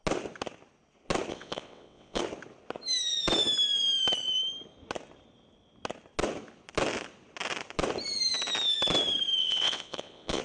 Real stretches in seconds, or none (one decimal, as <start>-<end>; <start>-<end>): 0.0-1.3; 2.2-9.4